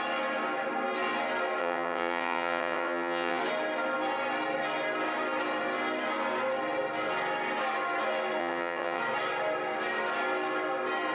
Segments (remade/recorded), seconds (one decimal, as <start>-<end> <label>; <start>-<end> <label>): 0.0-1.6 recorded; 1.6-3.4 remade; 3.4-8.4 recorded; 8.4-9.0 remade; 9.0-11.1 recorded